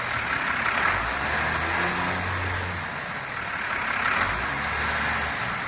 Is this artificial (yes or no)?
no